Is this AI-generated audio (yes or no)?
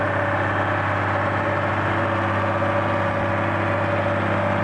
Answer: no